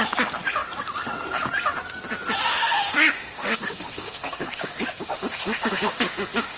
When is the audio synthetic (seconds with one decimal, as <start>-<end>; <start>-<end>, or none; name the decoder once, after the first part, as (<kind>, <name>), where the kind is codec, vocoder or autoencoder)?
2.5-6.6 (autoencoder, DAC-VAE)

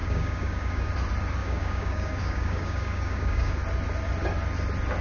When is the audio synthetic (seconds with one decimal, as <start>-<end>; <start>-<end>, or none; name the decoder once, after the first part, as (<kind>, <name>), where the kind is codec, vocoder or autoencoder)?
0.0-0.9 (codec, DAC); 1.4-3.6